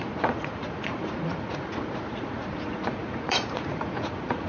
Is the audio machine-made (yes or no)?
yes